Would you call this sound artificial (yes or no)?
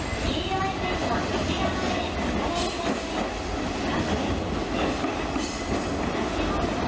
no